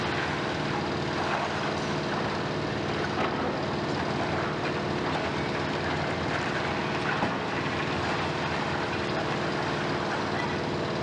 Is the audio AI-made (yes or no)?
no